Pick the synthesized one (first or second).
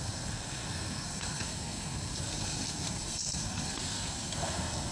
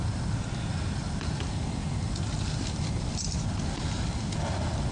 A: first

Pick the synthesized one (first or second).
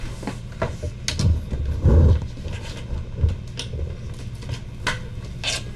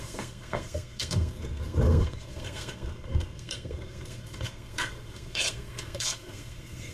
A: second